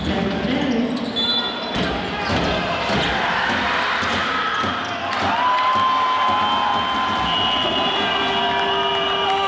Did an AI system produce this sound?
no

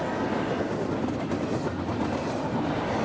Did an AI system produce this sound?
no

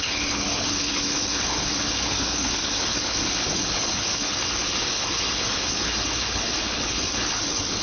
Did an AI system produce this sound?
yes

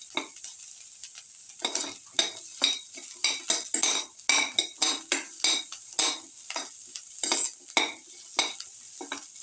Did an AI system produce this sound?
no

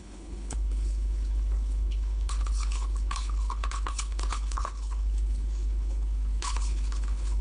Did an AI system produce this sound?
yes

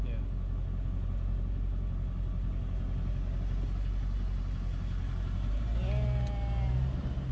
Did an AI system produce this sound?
no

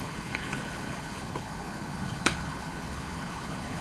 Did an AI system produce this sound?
yes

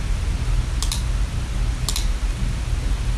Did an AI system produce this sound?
no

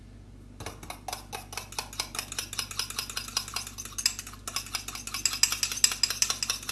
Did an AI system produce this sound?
no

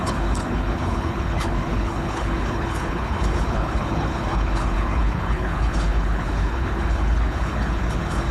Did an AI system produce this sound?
yes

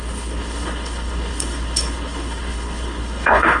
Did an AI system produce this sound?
yes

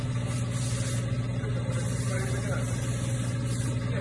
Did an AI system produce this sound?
no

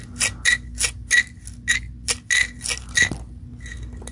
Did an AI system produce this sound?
no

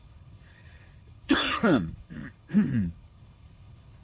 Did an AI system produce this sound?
yes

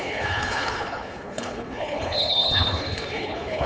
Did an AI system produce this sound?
yes